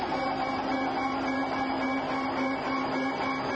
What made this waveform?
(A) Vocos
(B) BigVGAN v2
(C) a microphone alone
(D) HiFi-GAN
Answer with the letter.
C